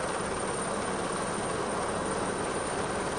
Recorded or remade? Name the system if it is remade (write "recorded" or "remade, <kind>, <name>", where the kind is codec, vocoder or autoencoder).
recorded